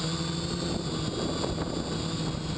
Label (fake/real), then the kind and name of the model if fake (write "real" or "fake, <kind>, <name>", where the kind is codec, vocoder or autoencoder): real